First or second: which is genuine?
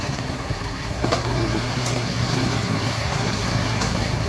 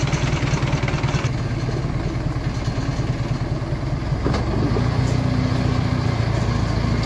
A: second